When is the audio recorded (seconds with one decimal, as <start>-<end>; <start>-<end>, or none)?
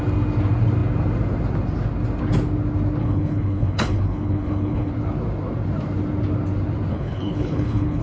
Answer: 0.0-3.0; 4.9-6.9